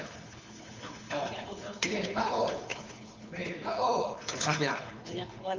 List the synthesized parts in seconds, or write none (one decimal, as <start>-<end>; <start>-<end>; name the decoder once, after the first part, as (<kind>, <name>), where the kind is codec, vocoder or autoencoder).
0.0-5.6 (codec, HILCodec)